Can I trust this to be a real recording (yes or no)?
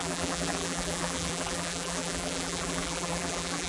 no